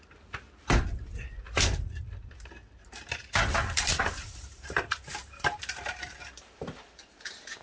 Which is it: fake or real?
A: fake